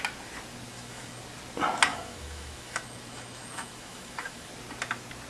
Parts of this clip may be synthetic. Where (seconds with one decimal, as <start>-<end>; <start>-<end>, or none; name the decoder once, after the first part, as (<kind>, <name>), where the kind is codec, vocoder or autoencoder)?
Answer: 0.7-1.2 (autoencoder, DAC-VAE); 1.9-4.5